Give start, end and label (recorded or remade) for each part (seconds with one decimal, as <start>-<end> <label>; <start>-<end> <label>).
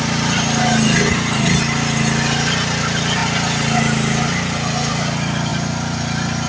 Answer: 0.0-6.5 recorded